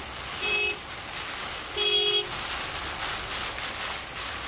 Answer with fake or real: real